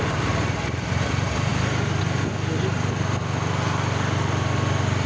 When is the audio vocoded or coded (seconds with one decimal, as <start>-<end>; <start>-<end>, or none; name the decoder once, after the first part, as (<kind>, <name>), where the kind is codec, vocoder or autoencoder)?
none